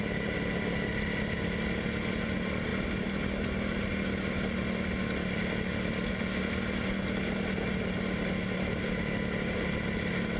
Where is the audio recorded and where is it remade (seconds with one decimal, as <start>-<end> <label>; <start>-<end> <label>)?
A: 0.0-10.4 recorded